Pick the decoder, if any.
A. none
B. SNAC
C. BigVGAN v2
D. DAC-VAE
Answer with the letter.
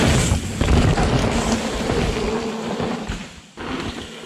A